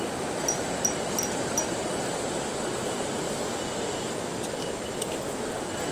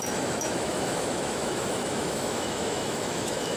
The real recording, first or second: first